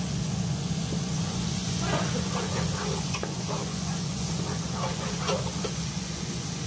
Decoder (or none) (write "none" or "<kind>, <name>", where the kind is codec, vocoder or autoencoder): vocoder, Vocos